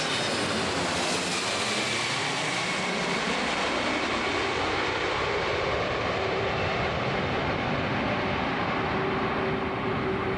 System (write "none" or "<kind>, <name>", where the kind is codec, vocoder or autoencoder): none